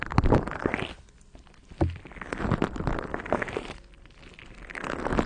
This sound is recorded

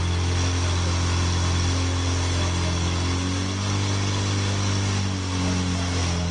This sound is recorded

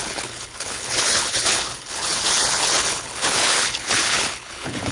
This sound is remade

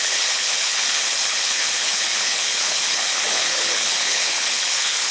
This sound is remade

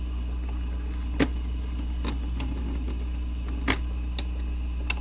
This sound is recorded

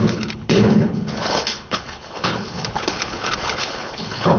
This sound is remade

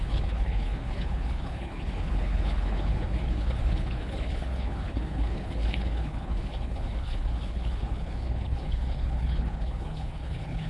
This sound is remade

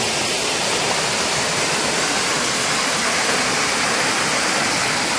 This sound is recorded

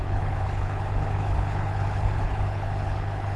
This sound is remade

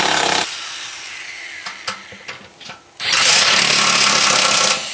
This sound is recorded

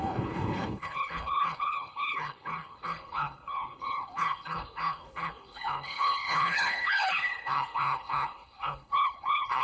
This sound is remade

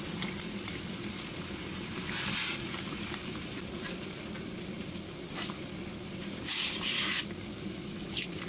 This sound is recorded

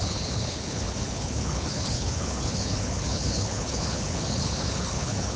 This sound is remade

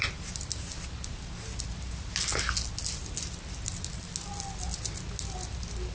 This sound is recorded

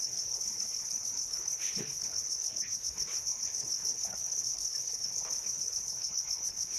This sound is remade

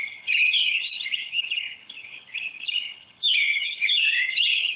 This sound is remade